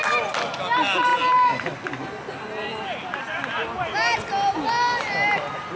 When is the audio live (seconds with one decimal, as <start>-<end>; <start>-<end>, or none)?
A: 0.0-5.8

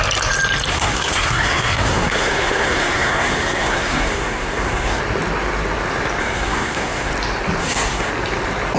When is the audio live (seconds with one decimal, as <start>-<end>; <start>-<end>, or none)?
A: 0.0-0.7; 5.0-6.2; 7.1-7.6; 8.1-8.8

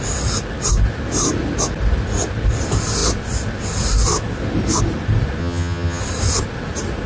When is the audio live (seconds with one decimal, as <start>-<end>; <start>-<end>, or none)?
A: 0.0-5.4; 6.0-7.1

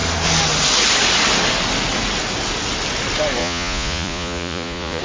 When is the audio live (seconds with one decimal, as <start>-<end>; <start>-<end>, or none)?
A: 0.0-3.4

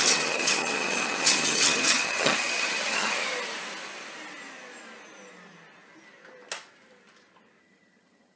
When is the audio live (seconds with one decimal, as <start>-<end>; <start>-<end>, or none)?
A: 3.2-7.6